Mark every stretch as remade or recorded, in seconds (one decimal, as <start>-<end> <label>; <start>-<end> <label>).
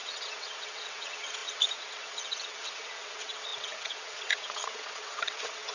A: 0.0-5.7 remade